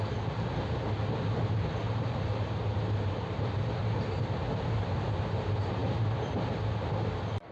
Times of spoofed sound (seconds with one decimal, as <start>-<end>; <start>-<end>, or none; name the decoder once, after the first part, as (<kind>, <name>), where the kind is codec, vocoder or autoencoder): 1.8-3.8 (vocoder, BigVGAN v2)